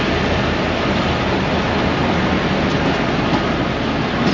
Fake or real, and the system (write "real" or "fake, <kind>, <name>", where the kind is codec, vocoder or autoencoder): real